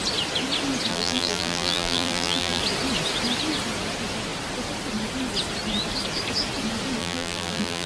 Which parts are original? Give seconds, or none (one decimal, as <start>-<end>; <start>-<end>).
0.0-0.9; 2.6-7.0